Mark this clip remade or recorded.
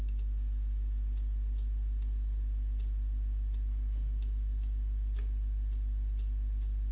recorded